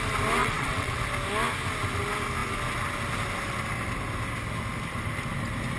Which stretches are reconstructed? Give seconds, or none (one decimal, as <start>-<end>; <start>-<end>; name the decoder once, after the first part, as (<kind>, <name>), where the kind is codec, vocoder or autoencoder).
0.4-1.0 (vocoder, WaveNeXt)